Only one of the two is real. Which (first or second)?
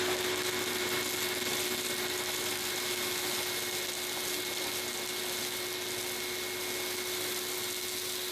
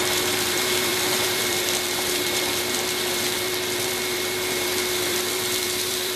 first